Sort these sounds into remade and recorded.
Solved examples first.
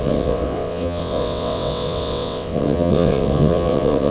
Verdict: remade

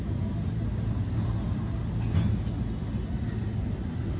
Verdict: recorded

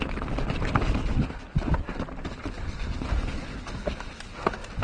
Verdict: recorded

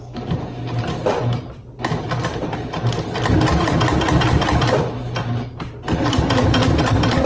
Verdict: recorded